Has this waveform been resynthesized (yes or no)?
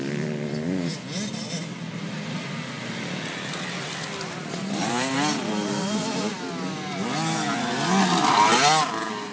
no